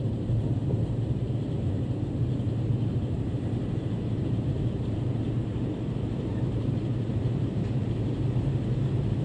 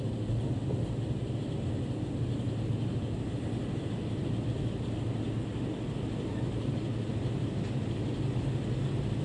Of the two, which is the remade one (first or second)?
first